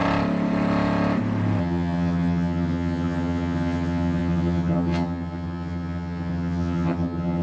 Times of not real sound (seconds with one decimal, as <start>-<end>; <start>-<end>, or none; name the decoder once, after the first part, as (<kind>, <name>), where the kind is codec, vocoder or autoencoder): 1.6-7.4 (vocoder, HiFi-GAN)